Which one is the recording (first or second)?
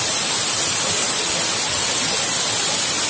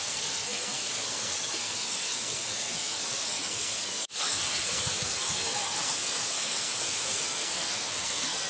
first